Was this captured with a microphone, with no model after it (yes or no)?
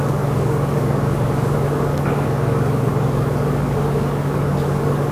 no